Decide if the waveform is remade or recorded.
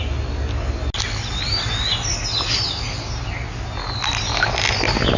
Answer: recorded